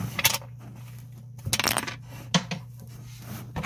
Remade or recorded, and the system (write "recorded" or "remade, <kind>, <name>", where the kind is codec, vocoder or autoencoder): recorded